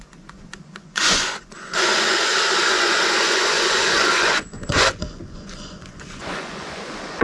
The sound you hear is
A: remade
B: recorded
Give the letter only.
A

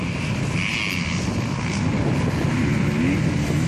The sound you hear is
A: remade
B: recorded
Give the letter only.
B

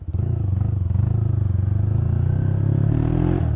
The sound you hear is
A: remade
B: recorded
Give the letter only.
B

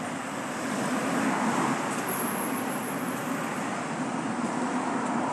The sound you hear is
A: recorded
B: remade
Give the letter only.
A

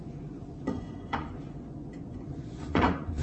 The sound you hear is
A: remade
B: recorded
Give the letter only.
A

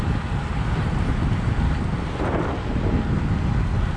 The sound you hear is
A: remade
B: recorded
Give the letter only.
B